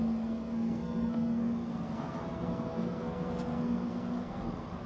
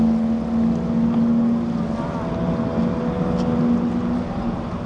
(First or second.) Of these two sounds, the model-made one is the first